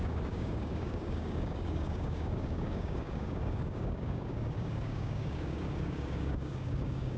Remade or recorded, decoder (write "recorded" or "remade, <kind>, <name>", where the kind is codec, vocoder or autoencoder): remade, codec, DAC